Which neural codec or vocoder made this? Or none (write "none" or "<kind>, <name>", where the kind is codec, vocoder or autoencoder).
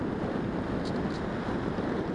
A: none